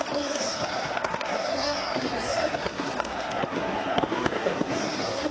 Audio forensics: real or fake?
fake